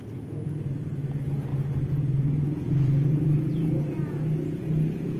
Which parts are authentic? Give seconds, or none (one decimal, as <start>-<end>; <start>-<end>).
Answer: none